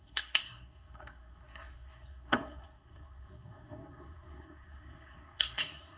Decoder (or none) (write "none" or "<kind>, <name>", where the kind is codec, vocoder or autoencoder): codec, SNAC